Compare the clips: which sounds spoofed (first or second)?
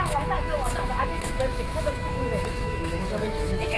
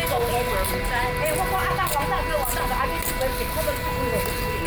first